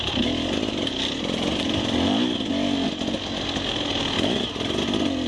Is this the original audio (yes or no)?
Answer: yes